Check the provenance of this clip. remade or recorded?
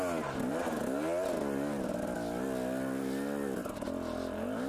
recorded